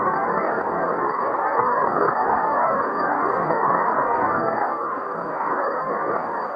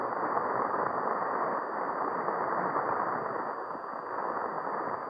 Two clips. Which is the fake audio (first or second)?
first